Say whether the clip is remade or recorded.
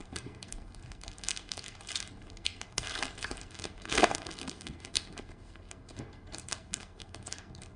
remade